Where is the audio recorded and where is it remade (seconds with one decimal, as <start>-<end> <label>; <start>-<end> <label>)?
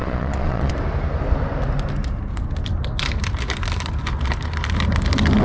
0.0-0.7 remade; 0.7-5.4 recorded